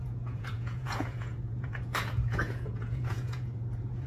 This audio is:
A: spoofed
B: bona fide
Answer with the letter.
A